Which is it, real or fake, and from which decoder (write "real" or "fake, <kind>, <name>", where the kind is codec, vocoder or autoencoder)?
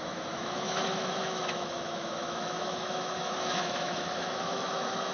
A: fake, autoencoder, DAC-VAE